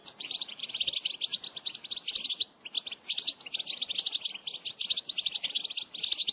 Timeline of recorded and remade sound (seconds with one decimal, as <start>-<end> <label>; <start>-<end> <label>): 0.0-0.6 remade; 0.6-6.3 recorded